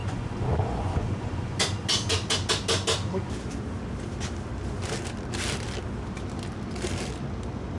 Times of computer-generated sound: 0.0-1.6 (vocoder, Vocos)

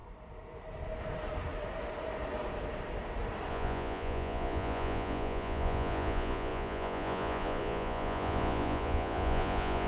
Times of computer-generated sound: 3.5-9.9 (vocoder, Vocos)

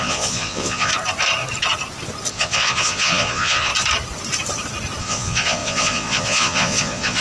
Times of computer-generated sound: 0.0-0.9 (vocoder, Vocos); 2.3-3.7; 5.0-7.2

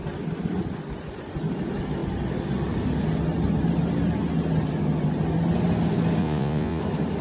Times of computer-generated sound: 6.2-6.8 (vocoder, Vocos)